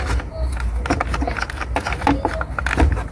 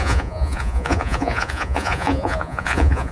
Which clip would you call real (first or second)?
first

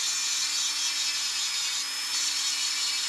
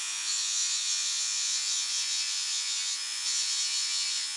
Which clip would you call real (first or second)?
first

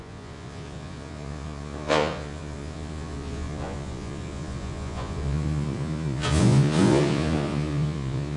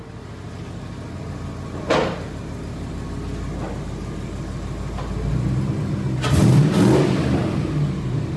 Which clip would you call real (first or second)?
second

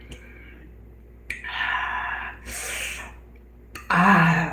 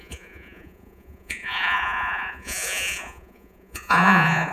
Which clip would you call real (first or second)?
first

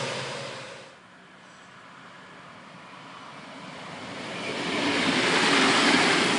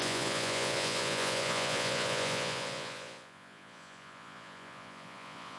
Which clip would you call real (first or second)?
first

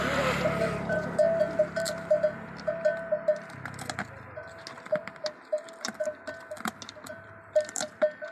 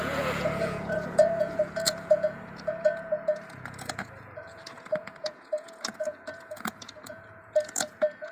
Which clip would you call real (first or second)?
first